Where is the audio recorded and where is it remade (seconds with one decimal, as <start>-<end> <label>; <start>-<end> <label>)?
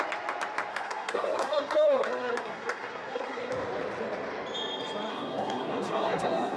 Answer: 0.0-0.7 recorded; 0.7-3.5 remade; 3.5-5.1 recorded; 5.1-6.6 remade